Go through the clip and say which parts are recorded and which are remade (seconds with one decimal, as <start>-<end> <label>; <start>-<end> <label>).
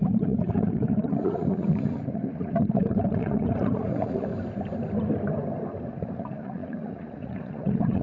0.0-4.3 remade; 4.3-5.9 recorded; 5.9-8.0 remade